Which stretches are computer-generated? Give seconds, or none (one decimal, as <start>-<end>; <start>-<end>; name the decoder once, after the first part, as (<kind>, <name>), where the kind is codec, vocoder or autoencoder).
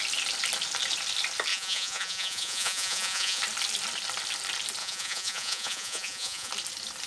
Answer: 1.5-3.4 (vocoder, Vocos); 4.8-6.5